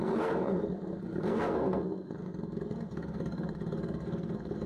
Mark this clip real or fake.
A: fake